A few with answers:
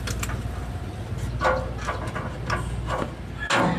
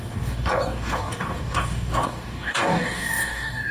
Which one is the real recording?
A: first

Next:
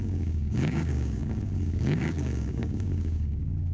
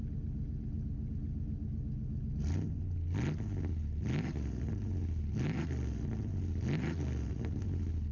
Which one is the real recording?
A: second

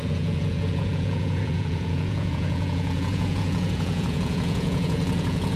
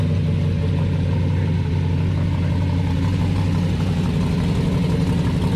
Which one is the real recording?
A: second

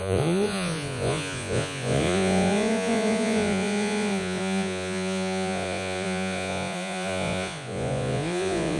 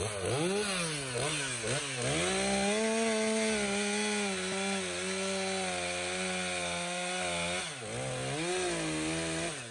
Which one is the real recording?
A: second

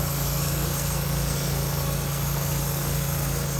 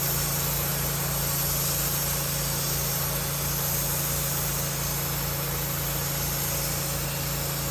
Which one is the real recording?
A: second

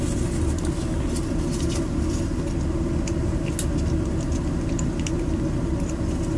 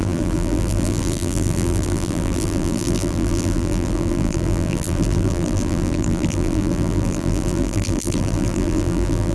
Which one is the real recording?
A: first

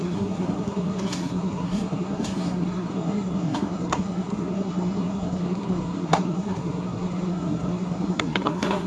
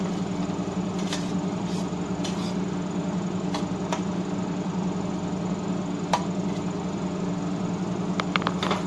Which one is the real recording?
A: second